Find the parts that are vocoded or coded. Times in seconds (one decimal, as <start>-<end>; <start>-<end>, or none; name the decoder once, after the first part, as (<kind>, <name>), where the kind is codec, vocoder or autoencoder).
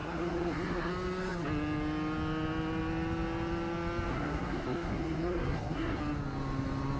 0.0-0.9 (codec, SNAC); 4.1-6.0